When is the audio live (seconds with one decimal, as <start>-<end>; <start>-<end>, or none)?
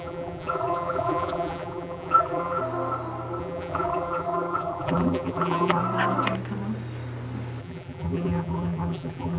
2.6-3.4; 5.8-7.6